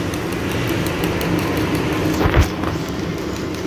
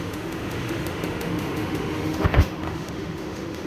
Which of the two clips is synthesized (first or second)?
second